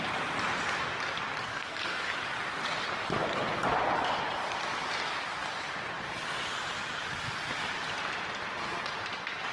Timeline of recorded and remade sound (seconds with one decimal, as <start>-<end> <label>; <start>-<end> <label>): 0.0-1.5 recorded; 1.5-2.1 remade; 2.1-9.5 recorded